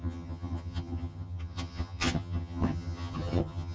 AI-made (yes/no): yes